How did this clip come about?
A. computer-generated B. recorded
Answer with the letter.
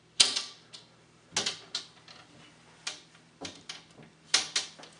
B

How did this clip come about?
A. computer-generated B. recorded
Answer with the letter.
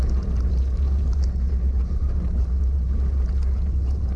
B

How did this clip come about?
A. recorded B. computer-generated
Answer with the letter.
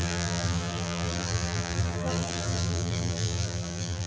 B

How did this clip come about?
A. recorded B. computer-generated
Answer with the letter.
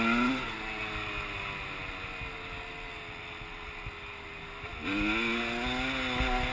A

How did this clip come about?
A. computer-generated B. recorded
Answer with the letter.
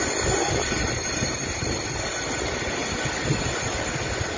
B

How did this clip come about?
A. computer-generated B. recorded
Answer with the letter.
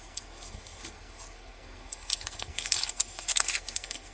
A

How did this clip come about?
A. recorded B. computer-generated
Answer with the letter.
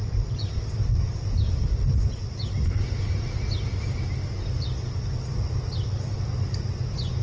A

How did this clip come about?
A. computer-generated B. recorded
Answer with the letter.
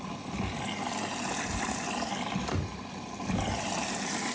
B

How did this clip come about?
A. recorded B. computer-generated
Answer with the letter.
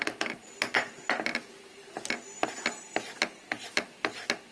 A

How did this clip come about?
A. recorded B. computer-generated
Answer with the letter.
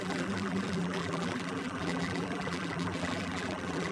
B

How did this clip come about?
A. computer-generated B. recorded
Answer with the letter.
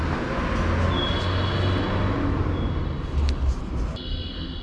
B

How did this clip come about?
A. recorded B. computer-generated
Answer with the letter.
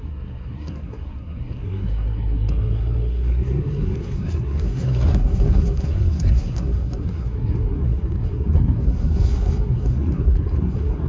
B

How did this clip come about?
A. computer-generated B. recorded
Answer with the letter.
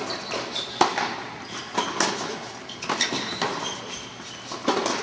B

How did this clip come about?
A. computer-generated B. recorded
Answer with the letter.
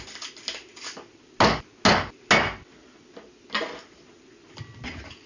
B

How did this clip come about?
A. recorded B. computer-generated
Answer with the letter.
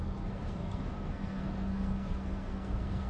B